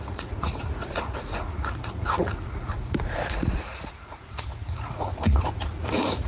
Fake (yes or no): yes